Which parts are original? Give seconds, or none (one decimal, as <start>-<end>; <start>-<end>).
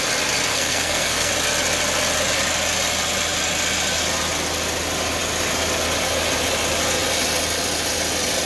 0.0-0.5; 1.3-8.5